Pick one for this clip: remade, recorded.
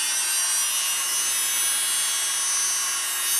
recorded